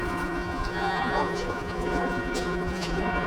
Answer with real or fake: fake